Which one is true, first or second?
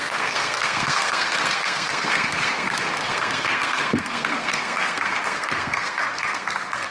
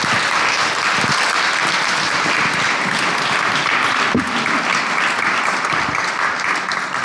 second